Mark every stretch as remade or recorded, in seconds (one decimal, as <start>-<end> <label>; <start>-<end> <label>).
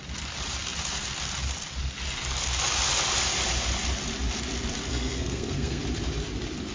0.0-4.9 recorded; 4.9-5.8 remade; 5.8-6.7 recorded